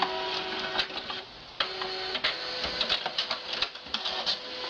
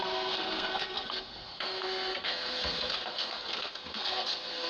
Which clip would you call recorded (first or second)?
first